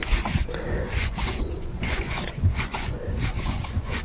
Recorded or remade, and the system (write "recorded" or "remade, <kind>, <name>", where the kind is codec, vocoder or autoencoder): remade, vocoder, Vocos